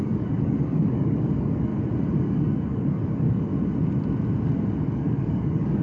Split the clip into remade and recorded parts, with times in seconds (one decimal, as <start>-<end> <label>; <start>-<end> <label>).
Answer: 0.0-1.7 remade; 1.7-2.2 recorded; 2.2-3.5 remade; 3.5-4.9 recorded; 4.9-5.8 remade